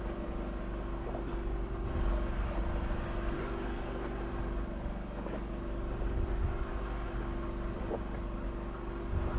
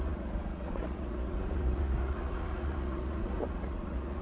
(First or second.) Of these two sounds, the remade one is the second